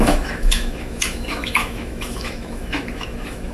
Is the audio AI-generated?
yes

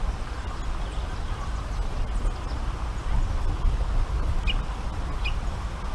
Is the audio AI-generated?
no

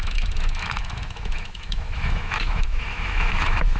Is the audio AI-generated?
yes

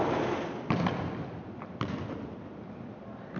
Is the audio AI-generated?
no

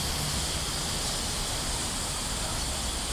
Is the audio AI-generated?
no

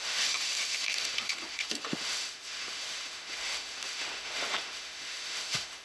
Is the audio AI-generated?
yes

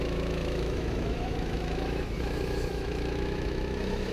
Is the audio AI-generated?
yes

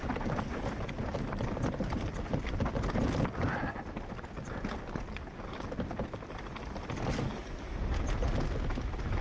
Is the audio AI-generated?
no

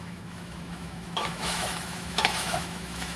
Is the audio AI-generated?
yes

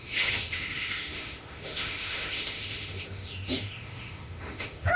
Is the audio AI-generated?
yes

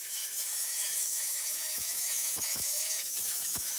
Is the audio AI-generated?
yes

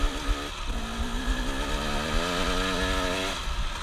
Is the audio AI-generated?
no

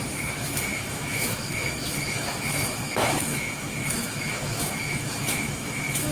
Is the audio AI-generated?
yes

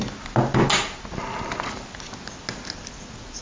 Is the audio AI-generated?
no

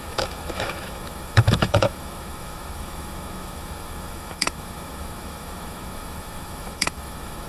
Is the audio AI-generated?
yes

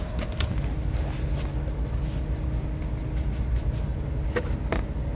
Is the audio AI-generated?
no